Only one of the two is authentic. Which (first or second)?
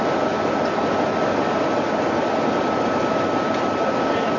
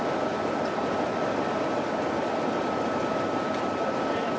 first